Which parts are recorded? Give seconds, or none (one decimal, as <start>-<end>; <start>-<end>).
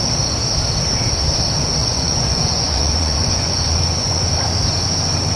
0.0-1.8; 4.3-5.4